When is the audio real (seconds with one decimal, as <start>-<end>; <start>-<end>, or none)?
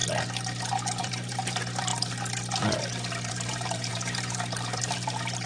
0.0-1.0; 1.9-3.3